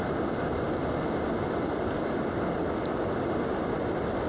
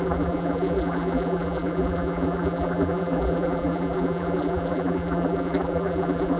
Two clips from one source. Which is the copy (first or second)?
second